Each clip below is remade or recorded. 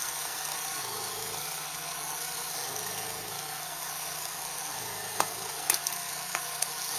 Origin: remade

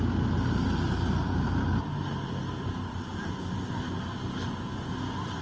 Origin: recorded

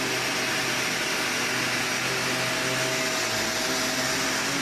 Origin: recorded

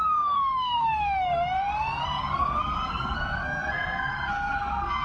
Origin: remade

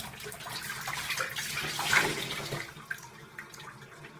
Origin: recorded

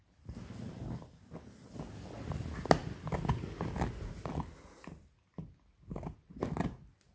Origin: recorded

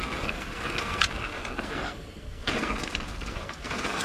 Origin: remade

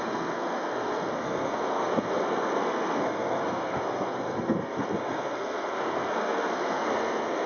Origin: remade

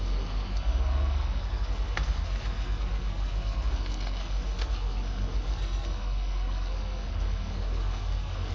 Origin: remade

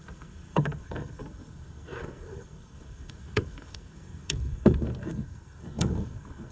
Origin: remade